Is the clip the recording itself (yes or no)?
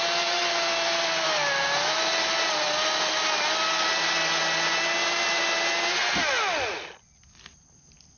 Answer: yes